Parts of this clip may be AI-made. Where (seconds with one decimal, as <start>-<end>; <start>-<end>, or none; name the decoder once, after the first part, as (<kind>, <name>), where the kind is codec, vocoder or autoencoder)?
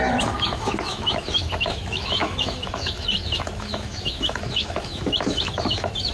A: 0.0-6.1 (autoencoder, DAC-VAE)